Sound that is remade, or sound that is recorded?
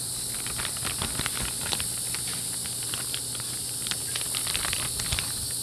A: recorded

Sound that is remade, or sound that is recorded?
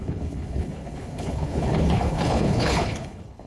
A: remade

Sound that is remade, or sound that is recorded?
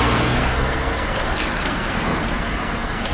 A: remade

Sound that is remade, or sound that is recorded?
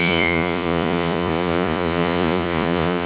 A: remade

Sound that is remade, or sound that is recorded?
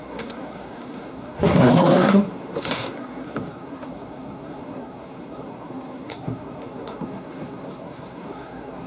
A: remade